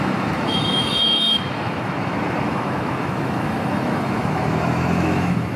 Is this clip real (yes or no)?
no